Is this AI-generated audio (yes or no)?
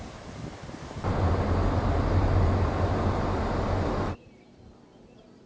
no